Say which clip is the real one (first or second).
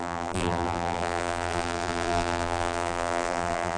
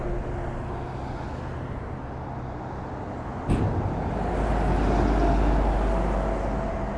second